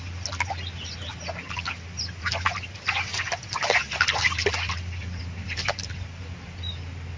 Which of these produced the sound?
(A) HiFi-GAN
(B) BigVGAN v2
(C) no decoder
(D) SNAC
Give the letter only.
C